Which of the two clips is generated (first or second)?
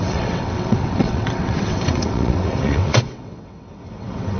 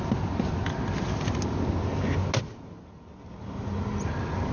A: first